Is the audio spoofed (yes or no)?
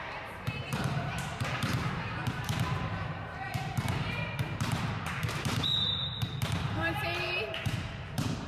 yes